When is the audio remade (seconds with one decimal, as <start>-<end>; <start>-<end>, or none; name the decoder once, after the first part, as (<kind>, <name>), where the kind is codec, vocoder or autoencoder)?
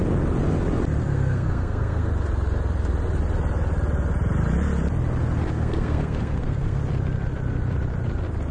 1.0-2.1 (codec, SNAC); 5.5-6.8